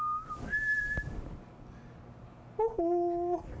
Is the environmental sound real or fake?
real